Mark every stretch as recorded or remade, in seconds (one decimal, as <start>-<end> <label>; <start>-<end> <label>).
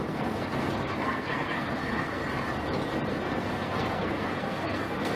0.0-2.2 remade; 2.2-3.1 recorded; 3.1-5.2 remade